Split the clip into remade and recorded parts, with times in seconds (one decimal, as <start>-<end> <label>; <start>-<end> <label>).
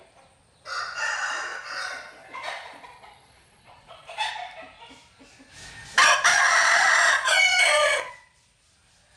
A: 0.0-1.5 recorded; 1.5-4.3 remade; 4.3-6.3 recorded; 6.3-8.1 remade; 8.1-9.2 recorded